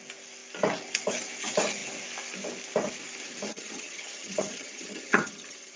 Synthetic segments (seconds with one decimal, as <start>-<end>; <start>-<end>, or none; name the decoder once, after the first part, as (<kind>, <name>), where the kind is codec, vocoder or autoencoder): 3.5-5.8 (vocoder, HiFi-GAN)